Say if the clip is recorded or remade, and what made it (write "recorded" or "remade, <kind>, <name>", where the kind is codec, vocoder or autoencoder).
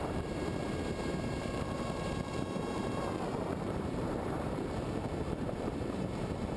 remade, vocoder, BigVGAN v2